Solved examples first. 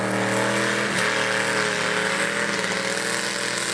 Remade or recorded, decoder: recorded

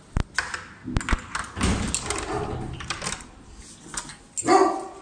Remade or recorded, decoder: recorded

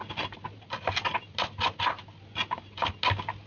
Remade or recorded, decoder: recorded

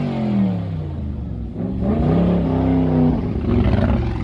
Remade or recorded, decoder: recorded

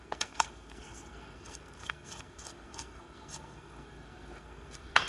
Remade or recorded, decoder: remade, codec, SNAC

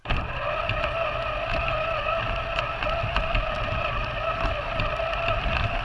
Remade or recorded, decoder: recorded